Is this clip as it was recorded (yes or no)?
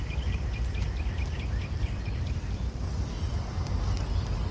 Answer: yes